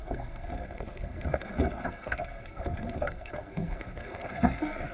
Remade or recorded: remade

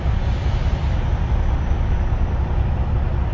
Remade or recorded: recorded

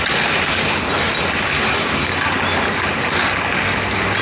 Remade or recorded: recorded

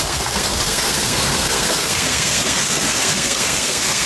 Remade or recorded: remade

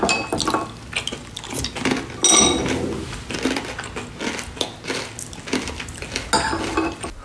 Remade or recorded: recorded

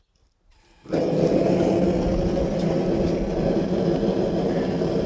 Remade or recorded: recorded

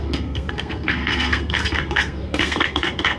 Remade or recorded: remade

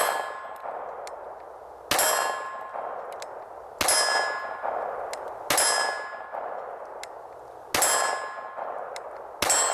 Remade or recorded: recorded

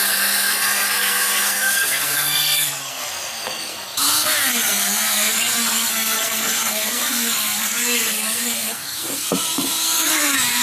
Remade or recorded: remade